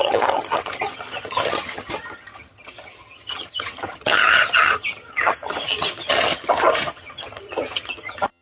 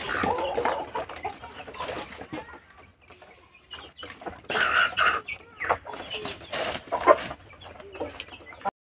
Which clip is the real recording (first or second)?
second